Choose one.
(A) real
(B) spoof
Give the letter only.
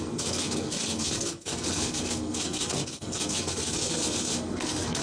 B